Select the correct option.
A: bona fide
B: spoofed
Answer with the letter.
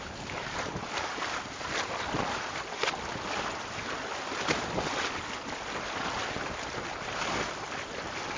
A